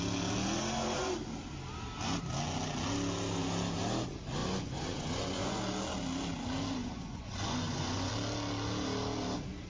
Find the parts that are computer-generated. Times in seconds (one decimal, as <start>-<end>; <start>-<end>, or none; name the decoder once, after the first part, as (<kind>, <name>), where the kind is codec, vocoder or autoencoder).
4.4-5.6 (vocoder, Vocos); 6.8-8.1